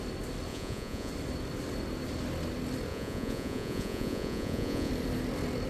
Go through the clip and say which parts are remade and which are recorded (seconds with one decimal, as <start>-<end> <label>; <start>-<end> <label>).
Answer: 0.0-0.5 recorded; 0.5-1.1 remade; 1.1-2.9 recorded; 2.9-4.9 remade; 4.9-5.7 recorded